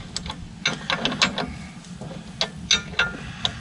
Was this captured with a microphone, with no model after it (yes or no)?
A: yes